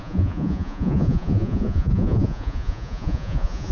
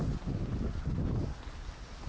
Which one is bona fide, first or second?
second